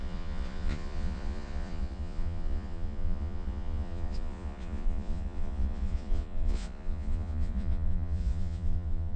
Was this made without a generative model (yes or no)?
no